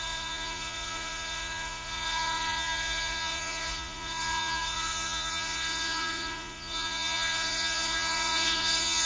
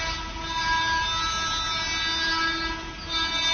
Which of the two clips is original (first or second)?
second